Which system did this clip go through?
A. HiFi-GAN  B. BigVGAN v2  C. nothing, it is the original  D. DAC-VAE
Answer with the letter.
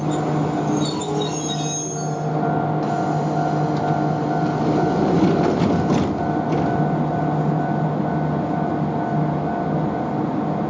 C